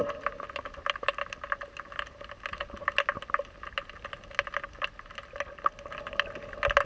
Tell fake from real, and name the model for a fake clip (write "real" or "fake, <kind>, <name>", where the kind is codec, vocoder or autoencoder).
real